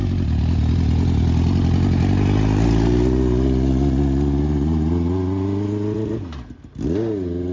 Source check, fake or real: real